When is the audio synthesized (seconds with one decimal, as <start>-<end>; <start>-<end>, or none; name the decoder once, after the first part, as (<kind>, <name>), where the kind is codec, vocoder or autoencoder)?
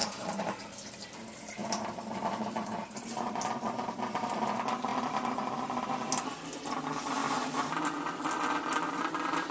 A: 0.0-0.6 (vocoder, BigVGAN v2); 1.6-4.4; 7.2-7.8